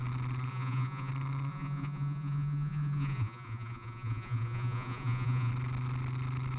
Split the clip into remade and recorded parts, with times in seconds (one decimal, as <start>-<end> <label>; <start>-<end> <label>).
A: 0.0-0.5 recorded; 0.5-1.1 remade; 1.1-1.5 recorded; 1.5-5.5 remade; 5.5-6.6 recorded